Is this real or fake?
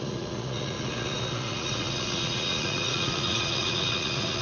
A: fake